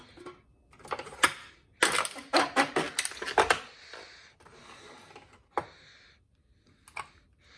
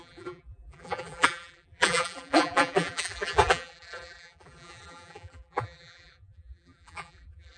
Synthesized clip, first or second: second